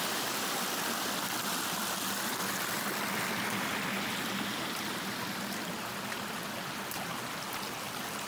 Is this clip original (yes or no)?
yes